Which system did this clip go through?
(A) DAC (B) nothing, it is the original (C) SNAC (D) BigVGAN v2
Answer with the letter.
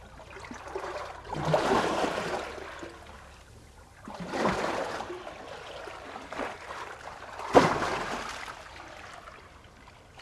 D